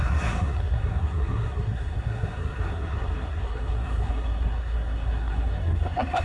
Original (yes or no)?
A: no